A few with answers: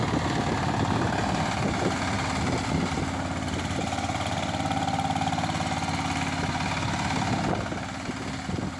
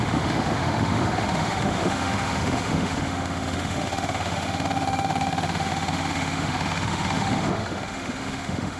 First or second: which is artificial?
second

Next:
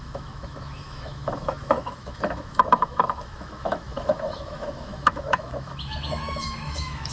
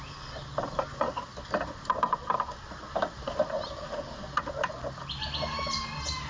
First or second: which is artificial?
first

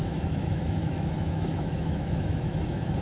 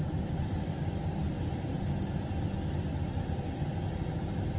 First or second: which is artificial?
first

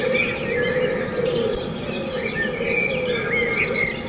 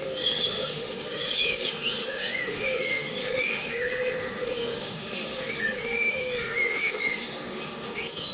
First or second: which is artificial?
second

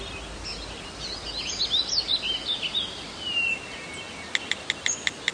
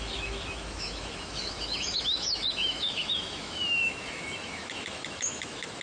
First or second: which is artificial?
second